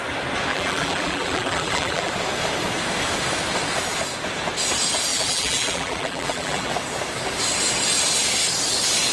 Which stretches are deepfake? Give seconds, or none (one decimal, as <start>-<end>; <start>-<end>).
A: 0.5-2.1; 5.1-6.7